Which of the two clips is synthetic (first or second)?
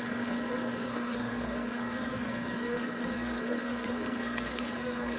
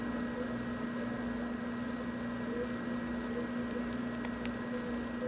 first